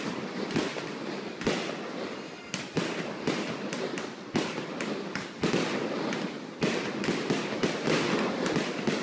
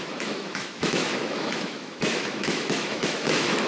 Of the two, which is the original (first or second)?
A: first